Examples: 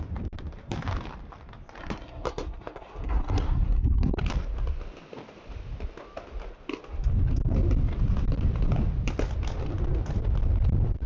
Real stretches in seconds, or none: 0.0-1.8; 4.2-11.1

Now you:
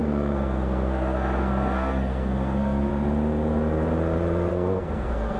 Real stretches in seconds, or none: 2.9-4.5

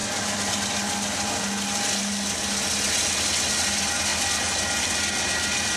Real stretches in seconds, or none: 0.0-5.8

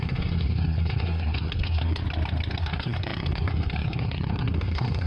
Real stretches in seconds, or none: 2.0-2.6

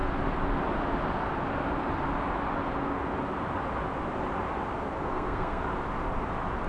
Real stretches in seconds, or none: 0.0-5.1; 5.6-6.7